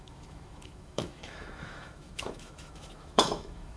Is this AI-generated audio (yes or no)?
yes